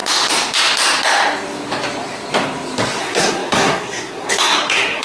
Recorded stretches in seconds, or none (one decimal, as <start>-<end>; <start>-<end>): 0.0-3.0